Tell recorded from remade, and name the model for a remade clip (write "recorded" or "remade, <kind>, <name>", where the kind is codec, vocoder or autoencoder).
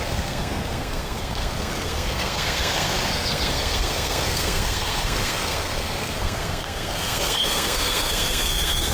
remade, codec, SNAC